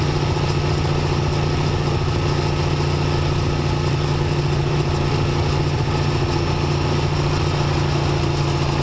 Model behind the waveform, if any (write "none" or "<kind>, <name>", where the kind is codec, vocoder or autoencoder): none